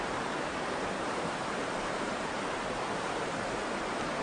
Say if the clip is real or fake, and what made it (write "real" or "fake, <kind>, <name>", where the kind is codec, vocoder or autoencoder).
fake, vocoder, BigVGAN v2